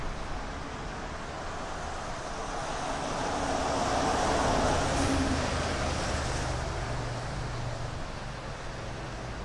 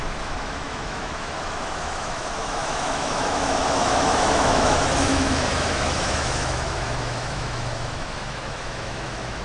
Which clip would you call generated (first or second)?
second